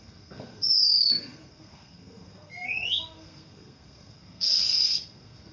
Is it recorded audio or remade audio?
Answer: remade